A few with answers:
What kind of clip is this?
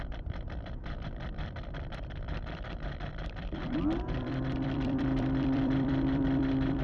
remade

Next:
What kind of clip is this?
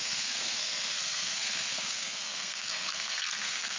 remade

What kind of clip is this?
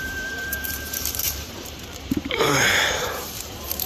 remade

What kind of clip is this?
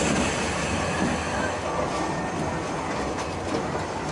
recorded